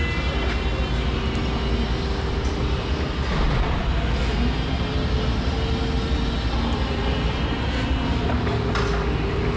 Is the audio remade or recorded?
recorded